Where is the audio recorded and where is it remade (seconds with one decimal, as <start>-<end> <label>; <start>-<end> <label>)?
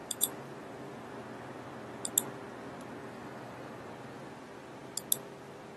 0.0-1.1 remade; 1.1-3.0 recorded; 3.0-3.9 remade; 3.9-5.8 recorded